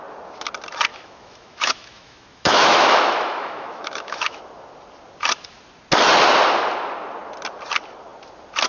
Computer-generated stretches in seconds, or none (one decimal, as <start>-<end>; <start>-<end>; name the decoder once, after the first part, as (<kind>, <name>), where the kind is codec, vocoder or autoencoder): 0.9-4.4 (autoencoder, DAC-VAE)